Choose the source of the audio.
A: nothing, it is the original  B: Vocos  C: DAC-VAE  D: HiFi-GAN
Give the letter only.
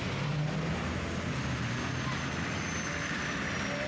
A